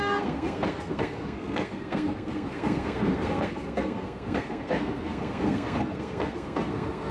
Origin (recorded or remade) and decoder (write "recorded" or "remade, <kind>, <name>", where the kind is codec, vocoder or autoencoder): remade, codec, SNAC